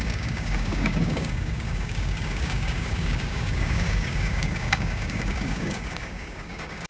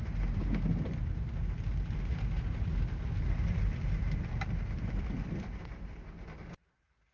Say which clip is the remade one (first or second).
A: first